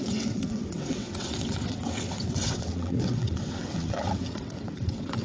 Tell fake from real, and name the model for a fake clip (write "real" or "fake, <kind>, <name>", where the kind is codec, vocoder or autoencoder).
fake, vocoder, WaveNeXt